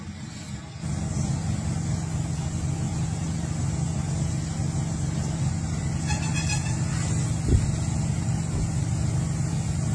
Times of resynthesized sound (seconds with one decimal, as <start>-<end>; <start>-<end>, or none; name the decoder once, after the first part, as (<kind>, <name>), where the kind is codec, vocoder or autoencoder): 2.9-3.5 (vocoder, BigVGAN v2)

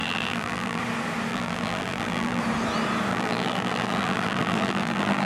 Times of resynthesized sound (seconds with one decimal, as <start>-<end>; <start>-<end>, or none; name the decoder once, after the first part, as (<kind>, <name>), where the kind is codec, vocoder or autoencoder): 0.0-0.8 (vocoder, BigVGAN v2); 1.3-2.4; 3.1-5.3

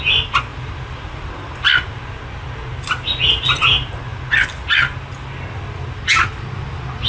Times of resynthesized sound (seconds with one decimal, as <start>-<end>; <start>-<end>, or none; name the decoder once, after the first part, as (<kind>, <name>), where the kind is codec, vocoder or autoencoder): 0.5-1.3 (vocoder, BigVGAN v2)

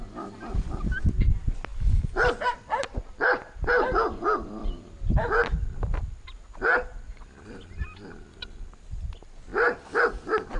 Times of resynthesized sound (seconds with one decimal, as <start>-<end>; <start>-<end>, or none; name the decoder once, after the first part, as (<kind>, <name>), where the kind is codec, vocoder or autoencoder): none

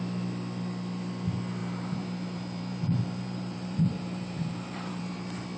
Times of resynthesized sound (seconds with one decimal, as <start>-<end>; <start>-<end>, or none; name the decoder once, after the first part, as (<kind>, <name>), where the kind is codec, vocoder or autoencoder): 1.6-5.0 (vocoder, BigVGAN v2)